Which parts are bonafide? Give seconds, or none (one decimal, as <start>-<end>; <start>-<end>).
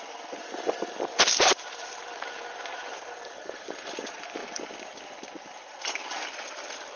0.0-7.0